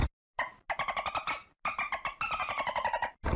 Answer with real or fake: real